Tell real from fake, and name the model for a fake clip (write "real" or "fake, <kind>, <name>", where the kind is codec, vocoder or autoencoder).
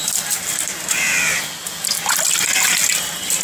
real